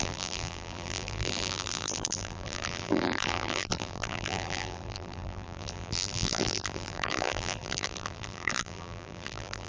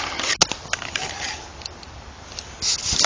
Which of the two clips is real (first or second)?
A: second